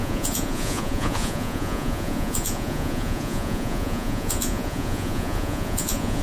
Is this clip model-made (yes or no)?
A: yes